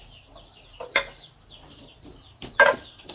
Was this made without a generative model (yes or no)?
no